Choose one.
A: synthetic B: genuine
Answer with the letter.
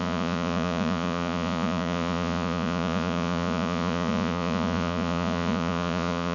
A